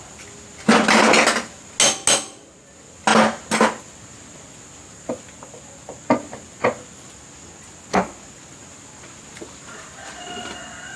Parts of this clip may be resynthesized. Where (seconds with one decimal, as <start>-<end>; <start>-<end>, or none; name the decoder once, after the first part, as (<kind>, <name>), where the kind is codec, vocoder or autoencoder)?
none